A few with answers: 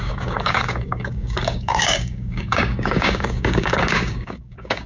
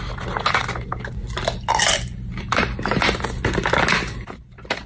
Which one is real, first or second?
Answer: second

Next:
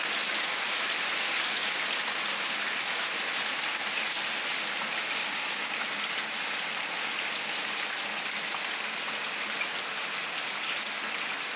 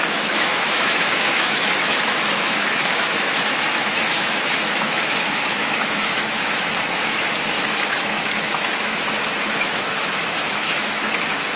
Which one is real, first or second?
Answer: first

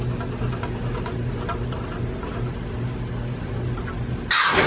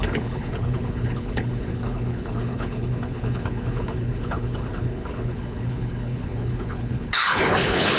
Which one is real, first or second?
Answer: first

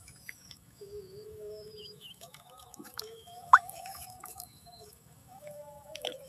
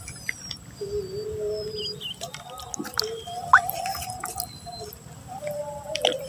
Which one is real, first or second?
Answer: second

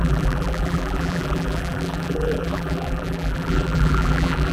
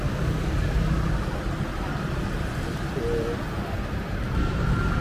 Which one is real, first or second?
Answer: second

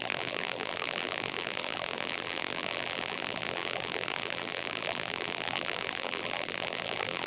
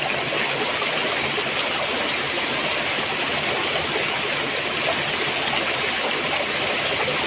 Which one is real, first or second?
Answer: second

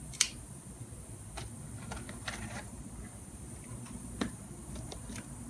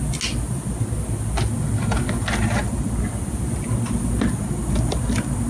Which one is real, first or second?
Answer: second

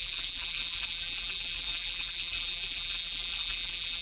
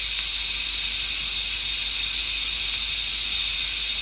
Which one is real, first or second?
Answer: second